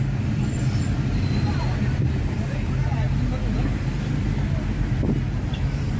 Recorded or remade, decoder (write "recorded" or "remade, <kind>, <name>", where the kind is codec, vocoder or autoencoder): recorded